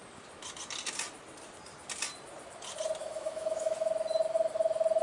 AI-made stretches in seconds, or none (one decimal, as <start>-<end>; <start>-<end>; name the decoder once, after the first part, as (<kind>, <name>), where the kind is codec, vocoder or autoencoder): 3.0-3.9 (autoencoder, DAC-VAE)